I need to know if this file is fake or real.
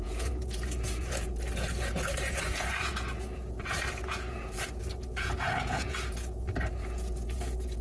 fake